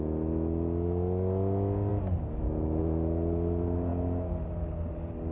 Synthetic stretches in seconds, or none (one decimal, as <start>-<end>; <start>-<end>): none